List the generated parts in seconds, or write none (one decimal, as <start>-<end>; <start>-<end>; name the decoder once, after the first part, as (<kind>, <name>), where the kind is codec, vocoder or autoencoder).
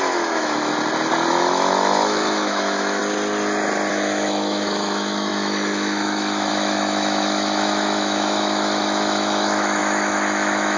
0.0-0.7 (autoencoder, DAC-VAE); 1.3-3.0; 3.9-10.8